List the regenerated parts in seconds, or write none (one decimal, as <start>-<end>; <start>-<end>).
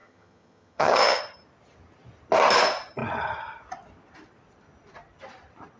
0.0-1.2